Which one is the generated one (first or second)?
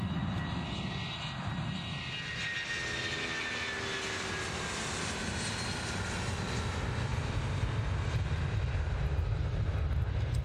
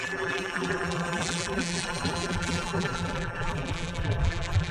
second